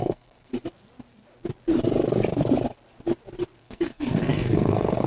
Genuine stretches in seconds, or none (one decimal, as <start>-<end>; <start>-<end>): 0.5-3.6